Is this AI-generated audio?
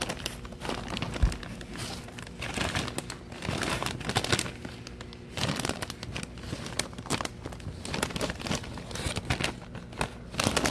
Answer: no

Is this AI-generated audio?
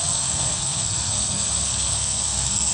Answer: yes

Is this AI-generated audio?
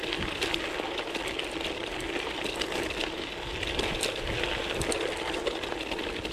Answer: no